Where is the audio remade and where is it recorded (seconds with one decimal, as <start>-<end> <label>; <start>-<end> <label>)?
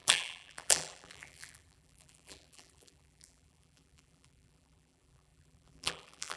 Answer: 0.0-6.4 remade